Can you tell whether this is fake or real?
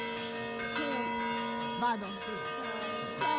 real